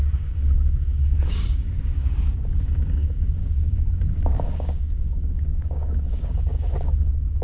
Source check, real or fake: fake